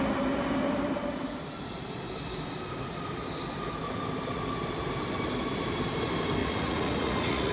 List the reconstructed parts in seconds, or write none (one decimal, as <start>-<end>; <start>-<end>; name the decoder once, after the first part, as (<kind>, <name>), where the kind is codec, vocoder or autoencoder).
6.4-7.5 (vocoder, Vocos)